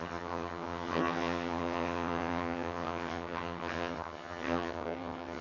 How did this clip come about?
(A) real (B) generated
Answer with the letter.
B